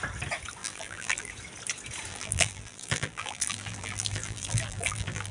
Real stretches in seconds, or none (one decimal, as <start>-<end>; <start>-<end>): 0.0-0.6; 1.3-2.1